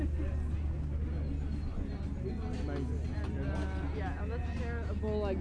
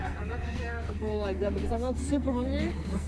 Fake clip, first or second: second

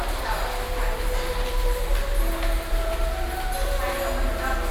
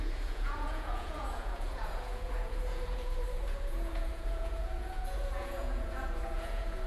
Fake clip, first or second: second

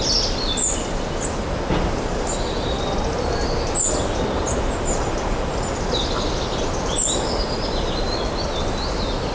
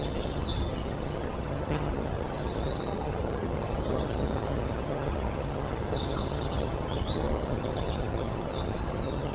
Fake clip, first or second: second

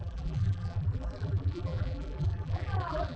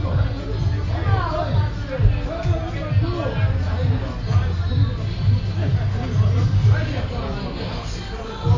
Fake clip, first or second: first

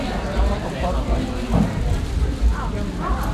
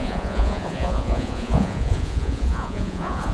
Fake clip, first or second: second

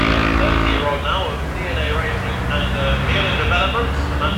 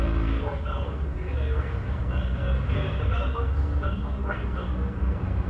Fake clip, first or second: second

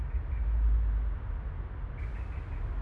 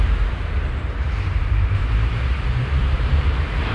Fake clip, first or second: second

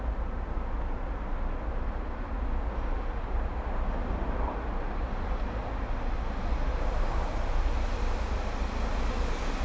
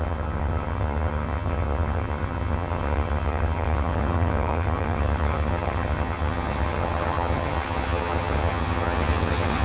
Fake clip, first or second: second